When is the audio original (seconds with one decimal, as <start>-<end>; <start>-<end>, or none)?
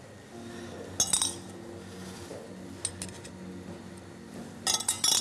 0.0-5.2